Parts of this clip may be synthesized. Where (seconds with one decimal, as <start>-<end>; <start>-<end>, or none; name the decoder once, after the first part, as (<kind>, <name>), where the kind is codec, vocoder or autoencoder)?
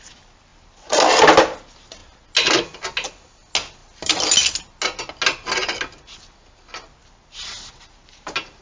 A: none